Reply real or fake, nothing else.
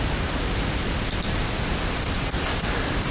fake